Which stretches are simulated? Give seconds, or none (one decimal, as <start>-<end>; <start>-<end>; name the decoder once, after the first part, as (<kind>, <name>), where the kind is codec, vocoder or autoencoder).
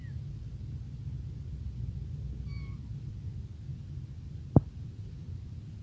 none